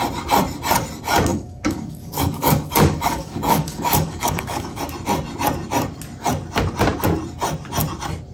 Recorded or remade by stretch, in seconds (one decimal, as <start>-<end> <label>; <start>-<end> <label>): 0.0-1.3 recorded; 1.3-4.8 remade; 4.8-8.3 recorded